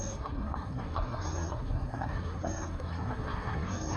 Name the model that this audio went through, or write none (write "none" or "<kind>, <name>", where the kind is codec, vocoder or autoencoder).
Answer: codec, SNAC